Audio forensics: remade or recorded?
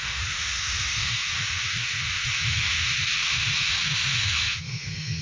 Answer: remade